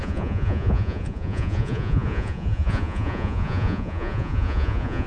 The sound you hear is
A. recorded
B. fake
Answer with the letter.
B